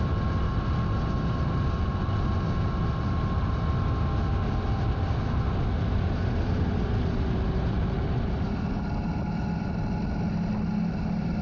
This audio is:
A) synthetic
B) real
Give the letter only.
B